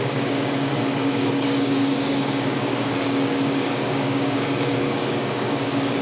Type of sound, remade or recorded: remade